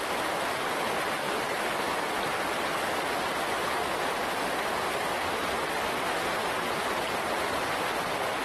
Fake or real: real